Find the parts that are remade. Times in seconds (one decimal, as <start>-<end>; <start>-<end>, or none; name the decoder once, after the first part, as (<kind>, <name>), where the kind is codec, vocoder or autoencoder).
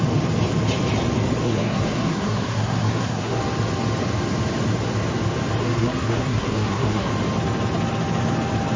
1.4-3.4 (codec, SNAC); 5.6-7.1